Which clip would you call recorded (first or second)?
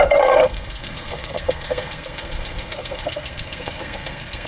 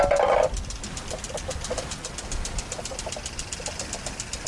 second